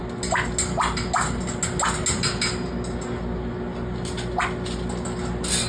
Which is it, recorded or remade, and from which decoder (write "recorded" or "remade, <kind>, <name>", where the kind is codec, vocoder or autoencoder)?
recorded